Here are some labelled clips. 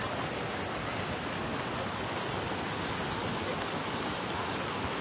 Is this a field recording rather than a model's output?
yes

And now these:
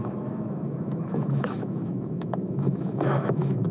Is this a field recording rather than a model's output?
no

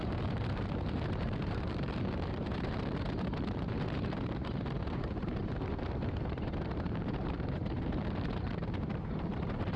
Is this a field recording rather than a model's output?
no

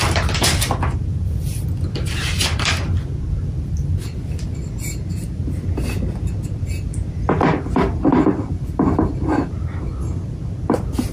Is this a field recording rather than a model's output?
no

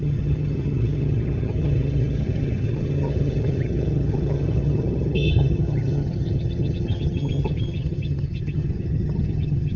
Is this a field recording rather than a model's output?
no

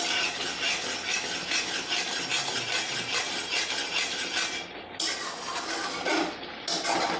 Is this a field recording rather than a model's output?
yes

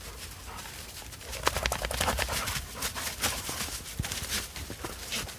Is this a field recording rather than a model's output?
no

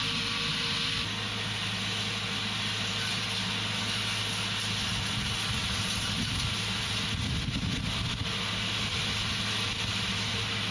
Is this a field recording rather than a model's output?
yes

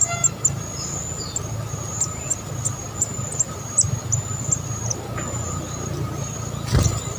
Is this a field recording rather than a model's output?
yes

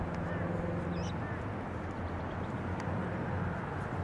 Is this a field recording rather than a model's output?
yes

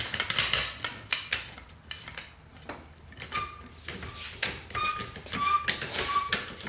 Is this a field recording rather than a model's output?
yes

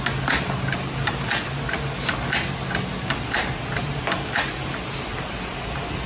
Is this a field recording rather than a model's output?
yes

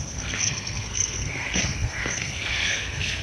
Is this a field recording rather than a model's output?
no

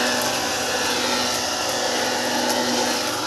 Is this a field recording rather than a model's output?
yes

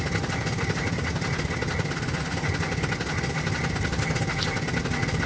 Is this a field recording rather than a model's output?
yes